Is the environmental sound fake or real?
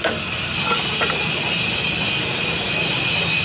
real